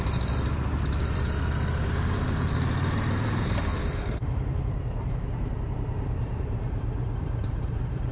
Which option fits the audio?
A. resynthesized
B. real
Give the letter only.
A